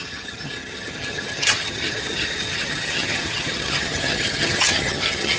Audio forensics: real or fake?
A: fake